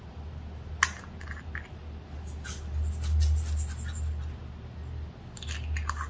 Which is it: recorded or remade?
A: recorded